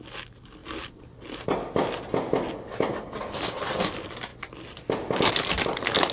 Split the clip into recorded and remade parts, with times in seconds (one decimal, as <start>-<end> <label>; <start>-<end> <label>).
0.0-6.1 recorded